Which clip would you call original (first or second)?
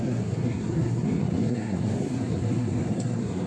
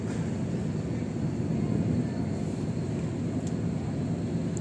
second